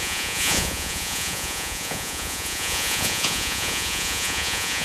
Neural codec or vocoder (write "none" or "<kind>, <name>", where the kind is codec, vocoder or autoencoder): vocoder, Vocos